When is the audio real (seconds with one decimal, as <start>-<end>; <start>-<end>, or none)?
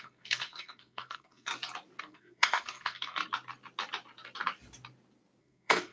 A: 1.5-2.0; 3.2-5.4